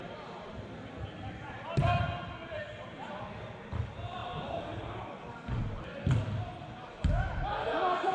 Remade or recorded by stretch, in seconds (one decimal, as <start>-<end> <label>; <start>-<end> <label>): 0.0-8.1 recorded